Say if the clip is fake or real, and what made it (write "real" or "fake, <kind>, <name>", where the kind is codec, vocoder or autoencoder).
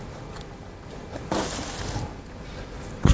real